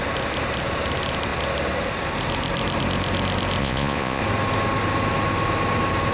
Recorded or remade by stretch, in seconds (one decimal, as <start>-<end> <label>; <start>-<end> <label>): 0.0-3.6 recorded; 3.6-4.2 remade; 4.2-6.1 recorded